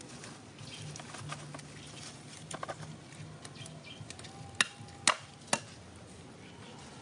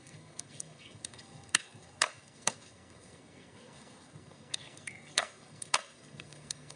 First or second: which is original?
first